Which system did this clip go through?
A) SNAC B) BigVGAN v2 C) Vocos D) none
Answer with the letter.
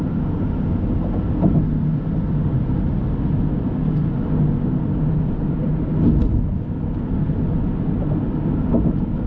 D